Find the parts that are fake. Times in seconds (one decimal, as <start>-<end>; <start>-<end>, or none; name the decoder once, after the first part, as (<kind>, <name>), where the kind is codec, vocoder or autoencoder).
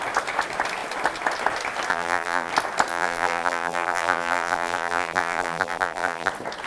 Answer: 1.9-2.5 (vocoder, BigVGAN v2); 2.9-6.3